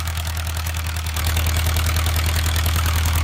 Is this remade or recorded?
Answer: remade